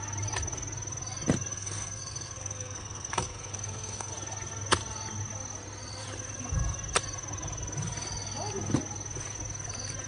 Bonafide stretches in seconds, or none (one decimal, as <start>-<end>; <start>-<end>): 0.0-1.5; 4.1-10.1